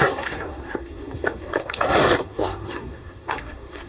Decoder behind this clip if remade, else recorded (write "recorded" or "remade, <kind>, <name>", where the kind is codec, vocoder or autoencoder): remade, codec, SNAC